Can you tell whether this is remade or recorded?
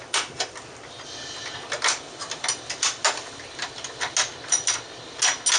recorded